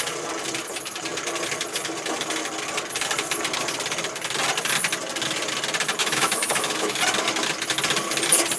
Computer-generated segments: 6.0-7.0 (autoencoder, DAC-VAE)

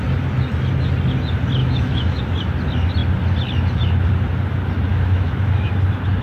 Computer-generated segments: 1.6-2.2 (autoencoder, DAC-VAE); 4.9-5.7